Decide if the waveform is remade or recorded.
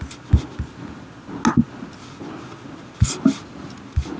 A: recorded